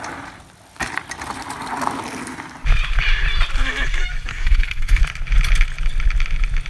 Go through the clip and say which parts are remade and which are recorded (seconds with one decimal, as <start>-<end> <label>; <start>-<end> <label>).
0.0-4.3 recorded; 4.3-5.0 remade; 5.0-6.7 recorded